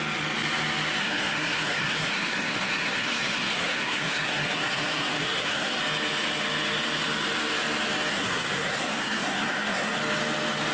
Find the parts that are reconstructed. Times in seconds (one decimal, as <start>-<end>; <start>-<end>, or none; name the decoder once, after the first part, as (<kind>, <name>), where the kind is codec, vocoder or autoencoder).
1.0-5.8 (codec, SNAC); 8.1-10.0